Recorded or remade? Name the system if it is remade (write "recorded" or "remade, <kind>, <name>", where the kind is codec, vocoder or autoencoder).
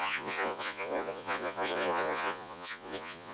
remade, vocoder, Vocos